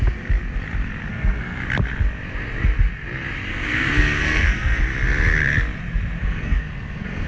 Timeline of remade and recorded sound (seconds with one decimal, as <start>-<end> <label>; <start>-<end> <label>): 0.0-1.1 recorded; 1.1-1.6 remade; 1.6-3.5 recorded; 3.5-4.8 remade; 4.8-6.2 recorded; 6.2-7.3 remade